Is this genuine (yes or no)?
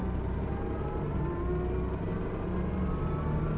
yes